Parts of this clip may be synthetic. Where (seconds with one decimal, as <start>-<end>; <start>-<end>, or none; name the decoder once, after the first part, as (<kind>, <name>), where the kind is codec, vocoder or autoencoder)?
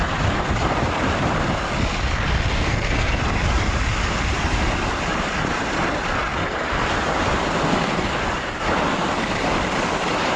2.5-3.2 (codec, SNAC)